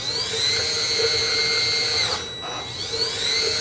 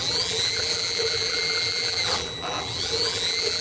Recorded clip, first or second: first